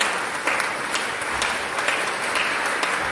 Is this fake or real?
real